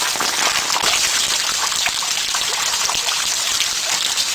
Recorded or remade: recorded